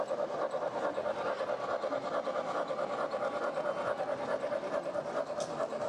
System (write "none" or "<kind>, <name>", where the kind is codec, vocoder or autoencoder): none